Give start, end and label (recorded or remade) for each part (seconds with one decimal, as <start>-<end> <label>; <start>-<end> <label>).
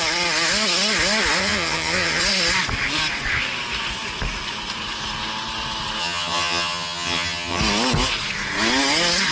0.0-1.4 recorded; 1.4-2.2 remade; 2.2-6.0 recorded; 6.0-7.6 remade; 7.6-9.3 recorded